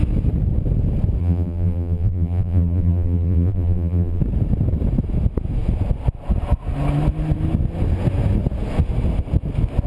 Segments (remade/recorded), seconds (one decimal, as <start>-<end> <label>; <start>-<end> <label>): 0.0-1.2 recorded; 1.2-4.2 remade; 4.2-9.9 recorded